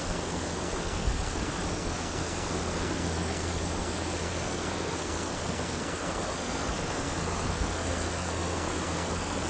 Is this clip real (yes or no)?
no